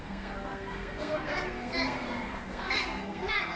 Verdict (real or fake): fake